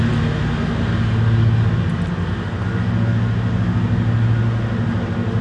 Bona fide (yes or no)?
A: yes